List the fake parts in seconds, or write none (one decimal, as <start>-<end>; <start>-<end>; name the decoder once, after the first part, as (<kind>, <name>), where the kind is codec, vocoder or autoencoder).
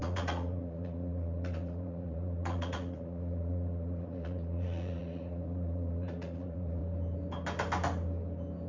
0.0-6.8 (vocoder, Vocos)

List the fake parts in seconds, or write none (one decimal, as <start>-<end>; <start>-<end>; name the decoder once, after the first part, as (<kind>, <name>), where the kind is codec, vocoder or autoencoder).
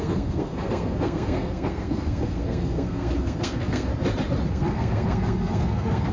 0.0-3.9 (codec, SNAC); 4.5-6.1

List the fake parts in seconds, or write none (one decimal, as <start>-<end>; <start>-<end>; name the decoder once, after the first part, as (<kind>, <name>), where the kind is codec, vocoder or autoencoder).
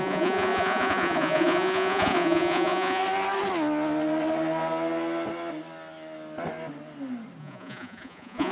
0.0-3.0 (vocoder, Vocos); 7.4-8.5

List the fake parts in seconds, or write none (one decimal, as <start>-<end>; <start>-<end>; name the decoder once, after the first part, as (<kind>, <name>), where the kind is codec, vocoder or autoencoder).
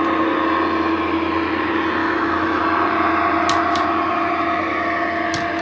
2.0-2.6 (autoencoder, DAC-VAE)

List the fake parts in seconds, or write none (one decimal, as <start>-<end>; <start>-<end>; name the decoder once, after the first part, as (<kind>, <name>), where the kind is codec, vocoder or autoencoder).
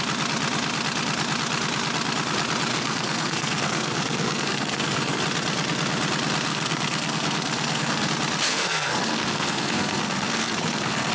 2.7-5.2 (codec, SNAC); 6.5-8.1; 8.5-11.1